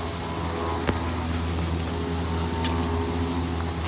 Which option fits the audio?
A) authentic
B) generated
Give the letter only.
A